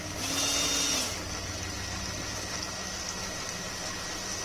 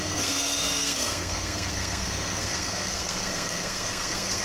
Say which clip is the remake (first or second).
second